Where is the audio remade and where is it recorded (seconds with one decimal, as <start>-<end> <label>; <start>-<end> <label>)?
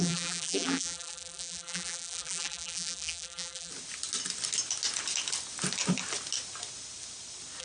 0.0-3.7 remade; 3.7-7.6 recorded